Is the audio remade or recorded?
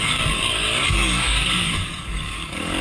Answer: remade